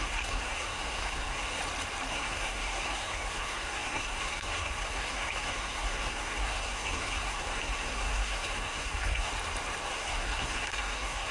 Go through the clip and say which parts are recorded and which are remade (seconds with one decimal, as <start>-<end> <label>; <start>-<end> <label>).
0.0-1.6 remade; 1.6-2.1 recorded; 2.1-9.3 remade; 9.3-9.9 recorded; 9.9-11.3 remade